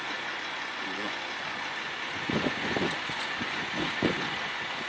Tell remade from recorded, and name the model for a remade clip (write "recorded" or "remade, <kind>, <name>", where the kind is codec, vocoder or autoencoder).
remade, vocoder, Vocos